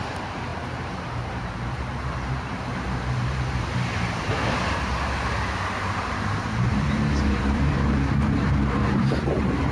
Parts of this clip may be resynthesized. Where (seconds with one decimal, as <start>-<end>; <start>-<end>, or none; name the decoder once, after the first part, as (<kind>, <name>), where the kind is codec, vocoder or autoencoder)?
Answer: 0.0-5.3 (vocoder, BigVGAN v2); 5.8-9.7